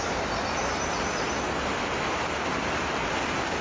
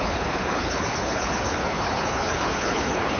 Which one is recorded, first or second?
first